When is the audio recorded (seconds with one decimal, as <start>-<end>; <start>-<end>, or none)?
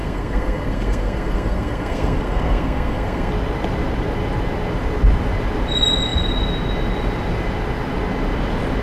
3.3-8.8